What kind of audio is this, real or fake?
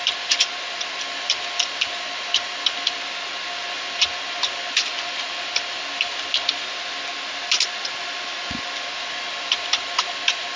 real